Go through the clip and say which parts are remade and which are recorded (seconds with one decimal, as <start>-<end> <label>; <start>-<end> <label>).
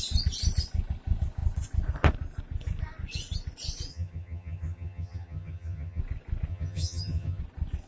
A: 0.0-3.9 recorded; 3.9-6.0 remade; 6.0-6.5 recorded; 6.5-7.4 remade; 7.4-7.9 recorded